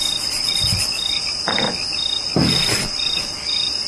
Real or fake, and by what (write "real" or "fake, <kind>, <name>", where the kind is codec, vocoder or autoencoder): real